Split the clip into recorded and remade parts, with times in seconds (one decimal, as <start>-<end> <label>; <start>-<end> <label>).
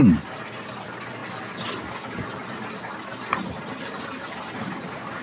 0.0-5.2 recorded